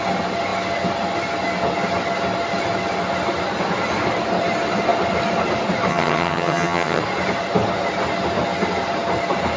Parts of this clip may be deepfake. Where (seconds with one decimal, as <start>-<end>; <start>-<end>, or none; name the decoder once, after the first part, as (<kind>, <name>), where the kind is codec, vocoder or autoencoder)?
5.9-7.0 (vocoder, HiFi-GAN)